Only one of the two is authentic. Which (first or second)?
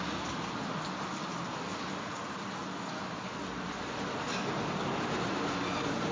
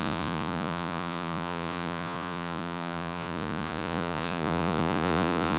first